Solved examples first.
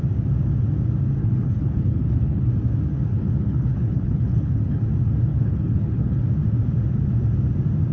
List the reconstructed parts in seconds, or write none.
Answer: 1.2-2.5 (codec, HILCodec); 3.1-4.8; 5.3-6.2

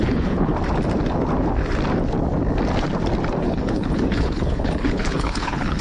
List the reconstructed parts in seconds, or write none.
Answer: 0.0-0.5 (codec, HILCodec); 3.4-5.8

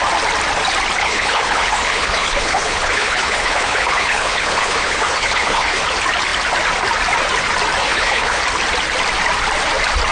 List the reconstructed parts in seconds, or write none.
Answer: 1.0-5.8 (codec, HILCodec); 7.8-8.4

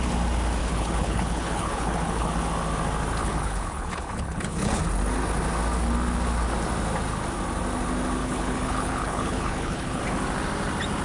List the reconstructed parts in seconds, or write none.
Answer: 0.6-2.3 (codec, HILCodec); 3.2-4.8; 8.2-10.0

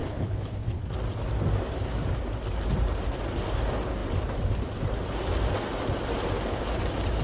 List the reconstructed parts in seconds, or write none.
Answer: 0.0-0.8 (codec, HILCodec)

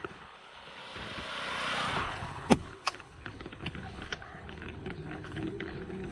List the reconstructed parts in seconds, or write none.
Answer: 0.0-0.8 (codec, HILCodec); 2.0-6.1